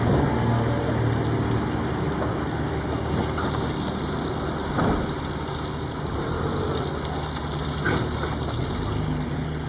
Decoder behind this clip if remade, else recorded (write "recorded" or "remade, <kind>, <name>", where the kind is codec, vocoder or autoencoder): recorded